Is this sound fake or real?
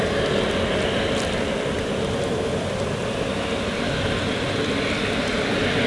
real